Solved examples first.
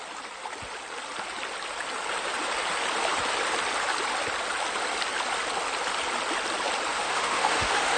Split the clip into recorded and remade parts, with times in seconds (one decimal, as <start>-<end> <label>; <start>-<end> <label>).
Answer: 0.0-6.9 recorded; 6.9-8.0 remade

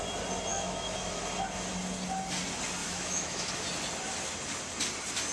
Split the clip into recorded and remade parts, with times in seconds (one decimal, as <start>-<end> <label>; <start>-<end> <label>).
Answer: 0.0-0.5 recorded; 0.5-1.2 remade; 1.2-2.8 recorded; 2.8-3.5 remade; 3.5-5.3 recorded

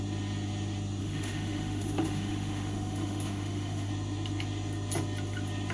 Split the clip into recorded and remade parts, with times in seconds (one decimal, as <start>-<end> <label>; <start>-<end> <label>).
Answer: 0.0-1.0 recorded; 1.0-3.9 remade; 3.9-5.7 recorded